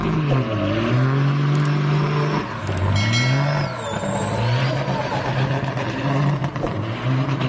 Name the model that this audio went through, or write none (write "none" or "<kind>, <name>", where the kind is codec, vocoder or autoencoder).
none